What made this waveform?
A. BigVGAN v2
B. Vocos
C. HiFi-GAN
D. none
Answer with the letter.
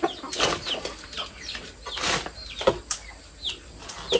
D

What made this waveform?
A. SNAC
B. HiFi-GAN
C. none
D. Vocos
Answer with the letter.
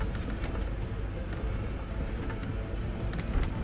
C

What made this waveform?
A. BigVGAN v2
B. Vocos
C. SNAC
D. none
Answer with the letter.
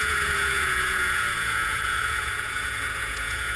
B